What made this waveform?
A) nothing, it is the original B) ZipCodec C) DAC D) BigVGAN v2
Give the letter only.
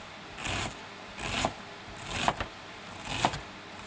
A